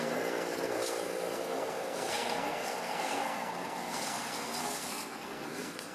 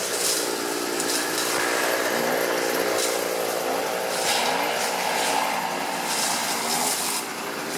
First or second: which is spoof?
first